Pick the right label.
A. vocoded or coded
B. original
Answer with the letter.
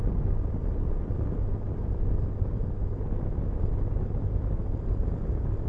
B